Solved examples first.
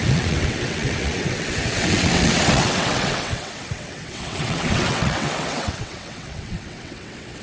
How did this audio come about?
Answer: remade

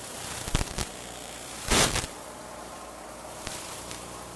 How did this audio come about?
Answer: remade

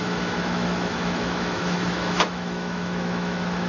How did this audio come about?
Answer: remade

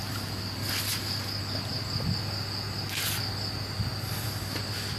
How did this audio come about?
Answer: recorded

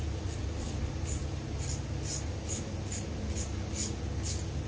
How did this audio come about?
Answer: recorded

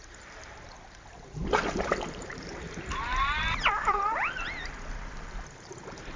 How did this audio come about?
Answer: remade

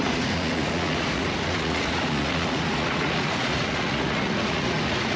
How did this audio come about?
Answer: remade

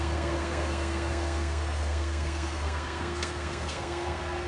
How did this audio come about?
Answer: remade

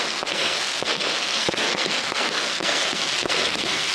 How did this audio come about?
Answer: remade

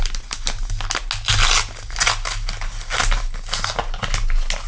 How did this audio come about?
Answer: recorded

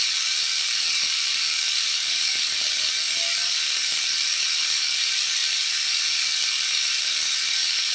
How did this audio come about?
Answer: remade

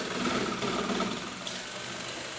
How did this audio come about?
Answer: recorded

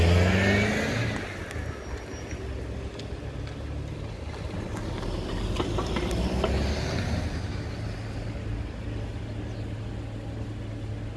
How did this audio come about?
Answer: recorded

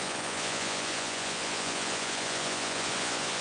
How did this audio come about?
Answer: remade